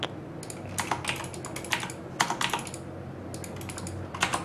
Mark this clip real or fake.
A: real